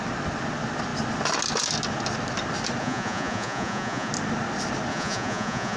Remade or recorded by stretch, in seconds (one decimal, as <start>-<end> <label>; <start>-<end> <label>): 0.0-2.8 recorded; 2.8-4.1 remade; 4.1-4.9 recorded; 4.9-5.8 remade